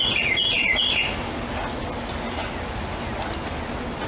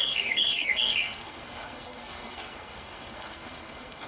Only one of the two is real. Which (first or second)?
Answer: first